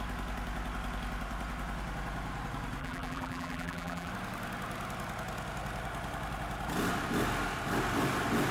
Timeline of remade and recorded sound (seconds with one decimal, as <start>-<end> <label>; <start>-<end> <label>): 0.0-2.8 recorded; 2.8-4.1 remade; 4.1-8.5 recorded